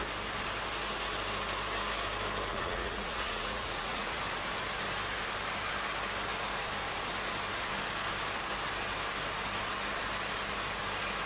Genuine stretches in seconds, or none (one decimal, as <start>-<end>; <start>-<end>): 0.0-2.5; 4.2-11.3